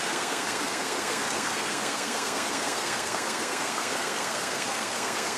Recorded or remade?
remade